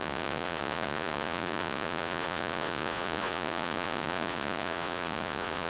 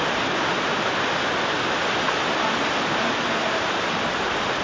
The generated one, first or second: first